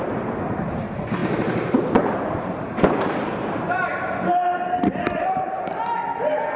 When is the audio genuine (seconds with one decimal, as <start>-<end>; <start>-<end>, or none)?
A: 1.2-1.8; 3.9-5.2; 5.7-6.6